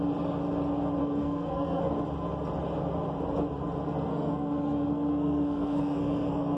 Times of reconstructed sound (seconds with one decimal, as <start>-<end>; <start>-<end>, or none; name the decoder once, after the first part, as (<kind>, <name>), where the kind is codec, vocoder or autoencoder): 1.0-1.8 (codec, SNAC); 4.1-6.6